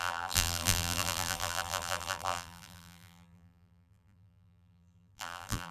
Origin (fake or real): fake